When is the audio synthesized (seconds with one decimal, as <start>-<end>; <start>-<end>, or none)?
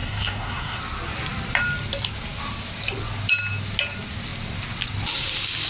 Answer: 0.0-0.8